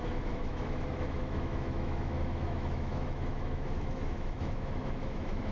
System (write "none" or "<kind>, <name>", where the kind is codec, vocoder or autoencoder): autoencoder, DAC-VAE